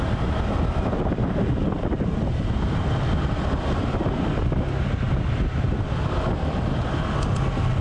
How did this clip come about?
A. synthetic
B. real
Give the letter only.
B